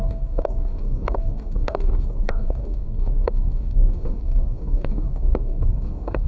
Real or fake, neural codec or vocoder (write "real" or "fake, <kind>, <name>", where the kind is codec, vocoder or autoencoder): fake, codec, DAC